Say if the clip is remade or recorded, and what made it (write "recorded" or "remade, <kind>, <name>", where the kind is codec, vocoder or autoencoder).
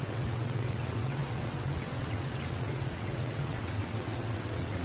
remade, vocoder, WaveNeXt